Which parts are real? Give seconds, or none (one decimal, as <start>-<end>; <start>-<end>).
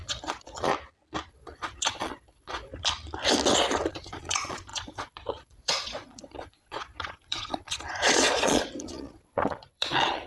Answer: 0.7-1.3; 2.7-3.9